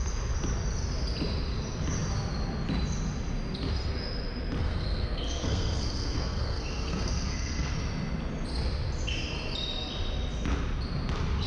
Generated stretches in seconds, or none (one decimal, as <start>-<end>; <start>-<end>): 4.6-7.8